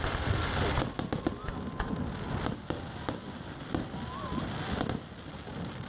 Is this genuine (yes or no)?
yes